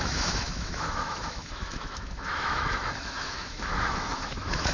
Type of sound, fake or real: fake